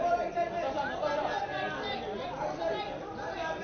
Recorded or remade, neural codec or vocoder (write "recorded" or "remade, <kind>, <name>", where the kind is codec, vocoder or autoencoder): recorded